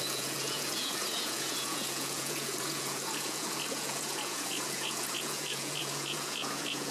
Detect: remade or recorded remade